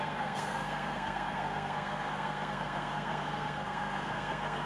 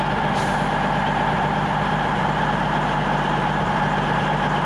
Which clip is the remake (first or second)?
first